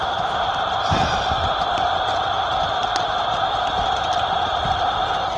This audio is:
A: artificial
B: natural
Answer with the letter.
B